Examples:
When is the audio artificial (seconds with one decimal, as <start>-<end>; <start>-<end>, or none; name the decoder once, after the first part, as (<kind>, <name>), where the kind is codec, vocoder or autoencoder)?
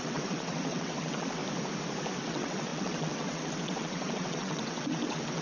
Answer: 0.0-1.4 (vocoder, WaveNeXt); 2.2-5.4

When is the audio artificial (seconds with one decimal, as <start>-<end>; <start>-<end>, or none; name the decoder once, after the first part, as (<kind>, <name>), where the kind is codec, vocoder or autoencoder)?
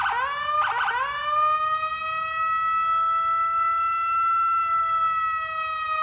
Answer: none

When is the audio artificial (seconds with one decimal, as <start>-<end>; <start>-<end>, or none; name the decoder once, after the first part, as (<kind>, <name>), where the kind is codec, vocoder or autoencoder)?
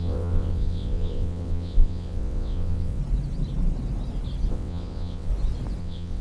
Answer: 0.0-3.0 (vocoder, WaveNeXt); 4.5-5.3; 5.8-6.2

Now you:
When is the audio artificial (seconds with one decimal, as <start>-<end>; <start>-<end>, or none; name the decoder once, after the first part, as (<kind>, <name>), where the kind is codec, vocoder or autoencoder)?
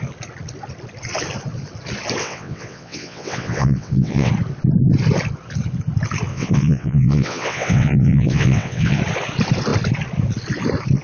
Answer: 2.2-4.3 (vocoder, WaveNeXt); 6.3-9.0